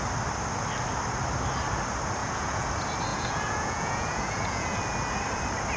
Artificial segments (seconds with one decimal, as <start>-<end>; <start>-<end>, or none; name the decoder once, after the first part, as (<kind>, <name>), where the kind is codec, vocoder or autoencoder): 2.2-2.7 (vocoder, Vocos); 3.1-4.8